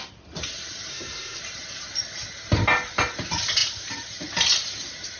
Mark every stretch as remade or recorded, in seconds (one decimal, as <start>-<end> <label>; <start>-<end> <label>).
0.0-0.9 recorded; 0.9-1.4 remade; 1.4-5.2 recorded